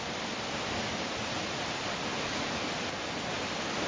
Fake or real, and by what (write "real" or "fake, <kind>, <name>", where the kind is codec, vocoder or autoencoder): real